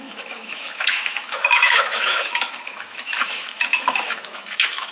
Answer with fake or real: fake